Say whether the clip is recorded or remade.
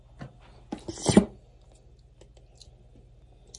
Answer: recorded